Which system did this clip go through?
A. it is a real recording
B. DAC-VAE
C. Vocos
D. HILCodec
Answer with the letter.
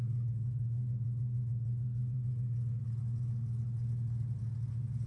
A